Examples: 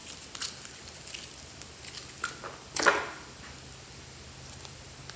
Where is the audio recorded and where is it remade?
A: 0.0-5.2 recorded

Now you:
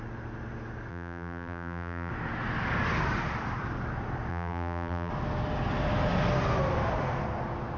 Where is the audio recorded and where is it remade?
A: 0.0-0.9 recorded; 0.9-2.1 remade; 2.1-4.3 recorded; 4.3-5.1 remade; 5.1-7.8 recorded